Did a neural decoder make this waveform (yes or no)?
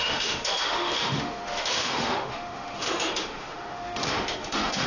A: yes